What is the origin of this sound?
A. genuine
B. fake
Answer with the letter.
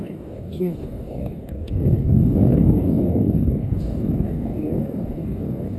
B